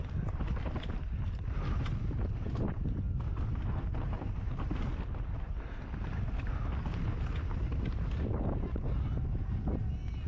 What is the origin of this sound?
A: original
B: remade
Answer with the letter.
A